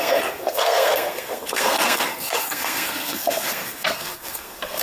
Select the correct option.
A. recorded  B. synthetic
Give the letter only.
B